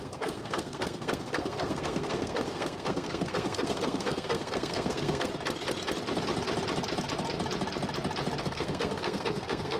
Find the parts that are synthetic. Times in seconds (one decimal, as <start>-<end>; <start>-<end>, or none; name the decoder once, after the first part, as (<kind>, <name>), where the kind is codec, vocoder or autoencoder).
0.0-5.3 (codec, SNAC); 8.4-9.8